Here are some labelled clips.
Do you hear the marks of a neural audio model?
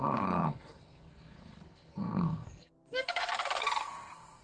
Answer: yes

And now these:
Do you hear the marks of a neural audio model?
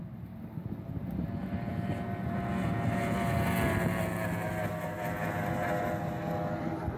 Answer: no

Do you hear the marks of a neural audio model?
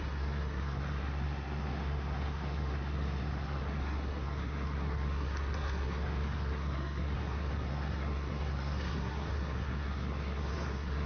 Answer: yes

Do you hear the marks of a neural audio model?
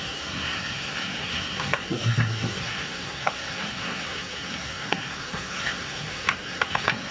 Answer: yes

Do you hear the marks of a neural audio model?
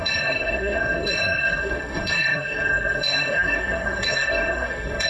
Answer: yes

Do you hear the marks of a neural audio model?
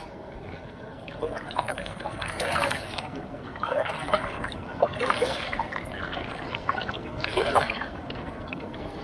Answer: yes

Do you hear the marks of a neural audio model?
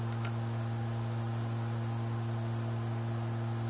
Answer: no